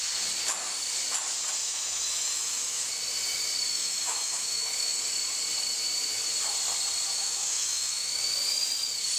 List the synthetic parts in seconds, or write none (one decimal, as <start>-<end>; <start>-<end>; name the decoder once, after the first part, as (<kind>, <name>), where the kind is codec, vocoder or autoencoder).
1.6-2.9 (autoencoder, DAC-VAE); 3.7-5.0; 7.1-8.2

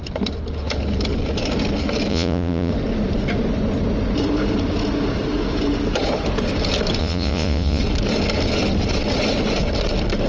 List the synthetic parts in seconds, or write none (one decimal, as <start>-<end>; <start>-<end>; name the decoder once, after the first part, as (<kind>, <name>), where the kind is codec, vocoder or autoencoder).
2.1-2.7 (vocoder, Vocos); 7.0-7.8